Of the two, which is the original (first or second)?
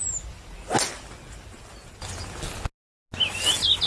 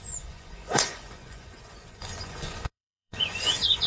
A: first